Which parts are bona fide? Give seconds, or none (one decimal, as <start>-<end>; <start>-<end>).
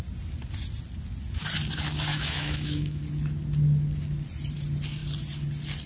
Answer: 0.0-2.1; 3.0-5.9